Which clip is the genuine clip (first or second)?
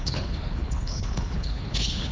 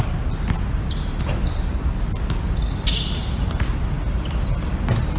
second